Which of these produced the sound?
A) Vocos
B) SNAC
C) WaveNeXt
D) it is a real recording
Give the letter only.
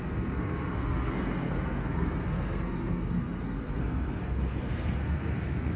B